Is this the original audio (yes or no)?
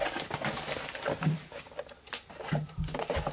yes